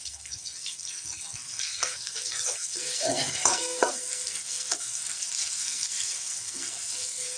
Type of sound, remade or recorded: remade